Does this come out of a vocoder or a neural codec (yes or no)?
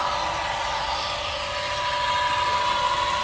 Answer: no